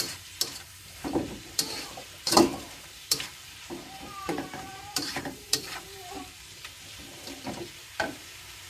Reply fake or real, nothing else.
fake